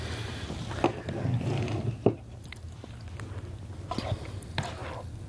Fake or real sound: real